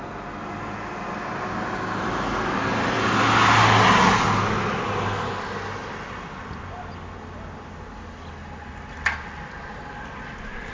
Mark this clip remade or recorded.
recorded